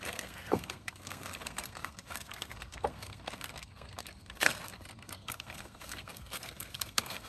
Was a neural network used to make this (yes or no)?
yes